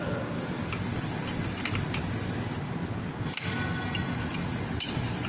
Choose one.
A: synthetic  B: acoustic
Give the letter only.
B